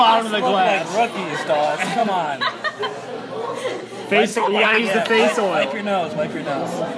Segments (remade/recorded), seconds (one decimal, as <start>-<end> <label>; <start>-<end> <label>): 0.0-4.3 recorded; 4.3-4.8 remade; 4.8-7.0 recorded